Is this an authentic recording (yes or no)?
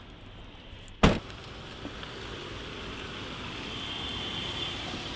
yes